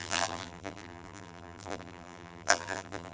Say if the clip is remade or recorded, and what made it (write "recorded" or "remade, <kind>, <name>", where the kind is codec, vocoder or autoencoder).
remade, vocoder, BigVGAN v2